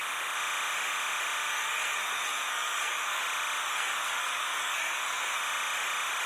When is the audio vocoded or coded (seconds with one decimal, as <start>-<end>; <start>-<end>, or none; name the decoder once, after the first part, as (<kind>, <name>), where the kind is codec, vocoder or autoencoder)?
1.5-3.2 (codec, SNAC); 3.6-5.4